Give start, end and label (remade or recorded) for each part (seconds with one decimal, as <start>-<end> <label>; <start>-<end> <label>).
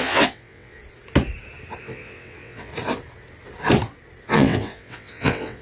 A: 0.0-0.8 remade; 0.8-1.8 recorded; 1.8-2.7 remade; 2.7-4.3 recorded; 4.3-5.6 remade